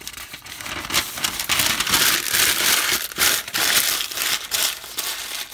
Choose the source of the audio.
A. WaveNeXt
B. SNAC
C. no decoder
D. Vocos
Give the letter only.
C